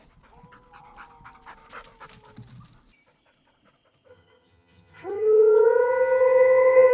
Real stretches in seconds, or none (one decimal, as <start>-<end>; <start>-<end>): 0.0-4.1